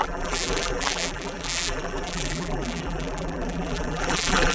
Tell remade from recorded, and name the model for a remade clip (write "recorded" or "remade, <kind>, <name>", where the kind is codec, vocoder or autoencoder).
remade, vocoder, BigVGAN v2